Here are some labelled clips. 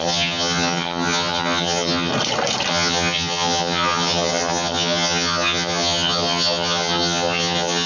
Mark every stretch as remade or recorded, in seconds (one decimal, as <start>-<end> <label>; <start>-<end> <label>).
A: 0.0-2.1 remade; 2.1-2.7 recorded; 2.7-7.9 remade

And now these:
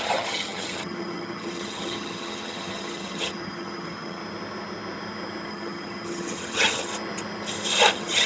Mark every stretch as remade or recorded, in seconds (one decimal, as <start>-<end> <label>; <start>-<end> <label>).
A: 0.0-4.2 remade; 4.2-5.5 recorded; 5.5-6.9 remade; 6.9-7.9 recorded; 7.9-8.3 remade

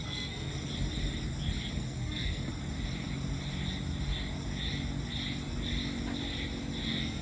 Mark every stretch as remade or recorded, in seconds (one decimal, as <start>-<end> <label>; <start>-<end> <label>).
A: 0.0-0.5 remade; 0.5-1.7 recorded; 1.7-2.5 remade; 2.5-6.8 recorded; 6.8-7.2 remade

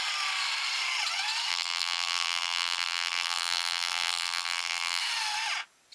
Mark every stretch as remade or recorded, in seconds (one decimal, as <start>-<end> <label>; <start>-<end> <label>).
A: 0.0-1.5 recorded; 1.5-5.0 remade; 5.0-5.9 recorded

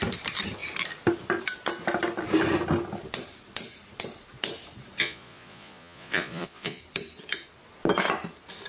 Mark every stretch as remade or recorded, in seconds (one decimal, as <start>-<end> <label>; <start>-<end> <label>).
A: 0.0-5.0 recorded; 5.0-6.8 remade; 6.8-8.7 recorded